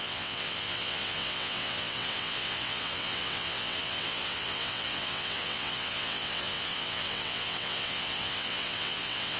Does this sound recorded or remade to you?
remade